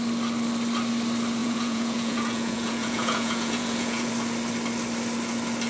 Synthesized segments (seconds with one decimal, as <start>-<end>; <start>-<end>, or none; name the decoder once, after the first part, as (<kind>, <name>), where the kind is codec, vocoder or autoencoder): 1.4-4.1 (vocoder, Vocos)